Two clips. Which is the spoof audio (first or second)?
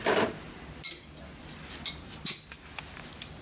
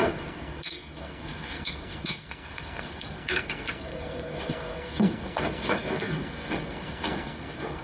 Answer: second